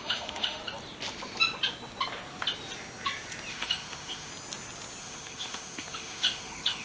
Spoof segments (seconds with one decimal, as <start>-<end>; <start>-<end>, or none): 0.0-0.6; 3.5-4.3; 5.0-6.8